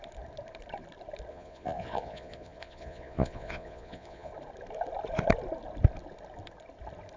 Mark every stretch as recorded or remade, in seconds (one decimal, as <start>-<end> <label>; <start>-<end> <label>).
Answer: 0.0-1.3 recorded; 1.3-4.3 remade; 4.3-7.2 recorded